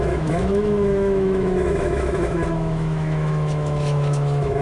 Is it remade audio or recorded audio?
remade